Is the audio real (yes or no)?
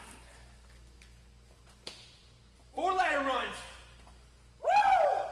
yes